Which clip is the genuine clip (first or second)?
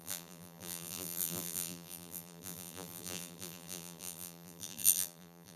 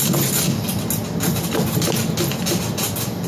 second